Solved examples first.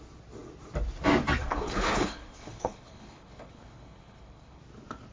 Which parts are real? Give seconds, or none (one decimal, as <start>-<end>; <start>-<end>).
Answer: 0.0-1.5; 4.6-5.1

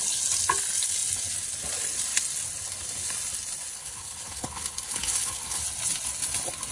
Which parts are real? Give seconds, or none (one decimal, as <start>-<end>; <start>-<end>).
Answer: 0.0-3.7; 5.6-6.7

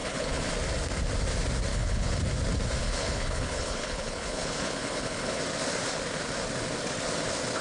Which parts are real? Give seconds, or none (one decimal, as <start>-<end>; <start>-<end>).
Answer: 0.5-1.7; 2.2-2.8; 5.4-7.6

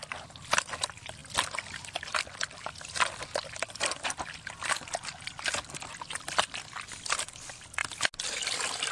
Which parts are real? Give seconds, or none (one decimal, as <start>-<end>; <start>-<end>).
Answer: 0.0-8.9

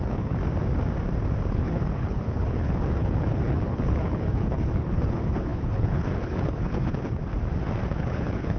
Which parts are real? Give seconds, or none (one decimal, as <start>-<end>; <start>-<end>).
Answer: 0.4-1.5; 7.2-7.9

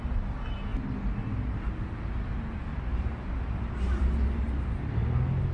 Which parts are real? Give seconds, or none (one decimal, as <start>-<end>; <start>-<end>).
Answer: 0.0-5.5

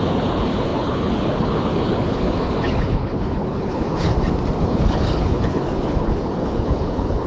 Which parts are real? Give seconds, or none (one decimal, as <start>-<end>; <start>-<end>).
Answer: 4.1-4.6

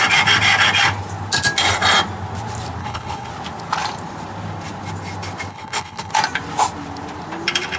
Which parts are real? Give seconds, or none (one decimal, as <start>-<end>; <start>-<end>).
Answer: 0.0-2.8; 3.3-5.5; 6.1-7.8